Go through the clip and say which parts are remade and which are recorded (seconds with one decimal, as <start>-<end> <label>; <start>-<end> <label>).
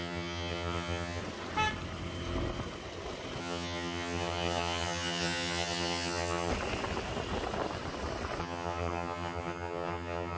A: 0.0-1.2 remade; 1.2-3.4 recorded; 3.4-6.5 remade; 6.5-8.4 recorded; 8.4-10.4 remade